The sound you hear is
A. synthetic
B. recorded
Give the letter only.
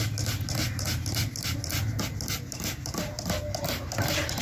B